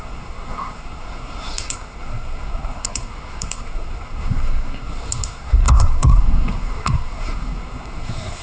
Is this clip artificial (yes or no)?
yes